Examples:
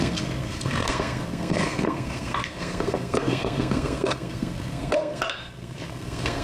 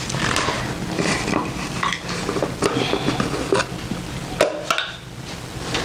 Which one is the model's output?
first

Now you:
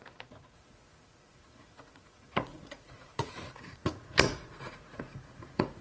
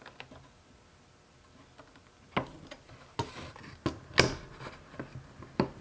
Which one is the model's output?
first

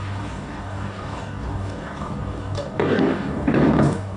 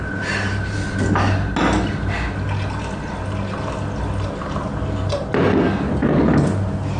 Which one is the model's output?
first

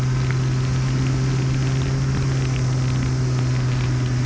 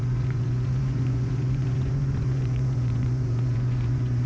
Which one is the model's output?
second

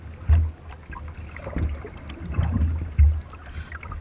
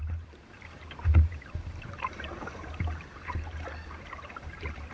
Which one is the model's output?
second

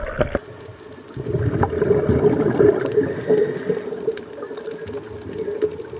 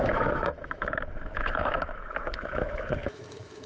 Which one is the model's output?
second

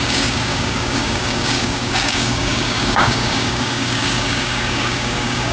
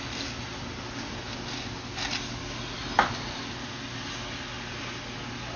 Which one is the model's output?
first